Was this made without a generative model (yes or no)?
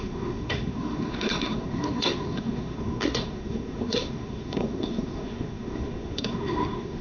no